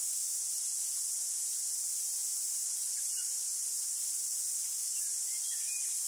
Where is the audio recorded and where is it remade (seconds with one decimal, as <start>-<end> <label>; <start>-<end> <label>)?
0.0-6.1 recorded